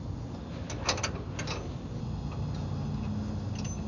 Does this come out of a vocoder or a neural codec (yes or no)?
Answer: no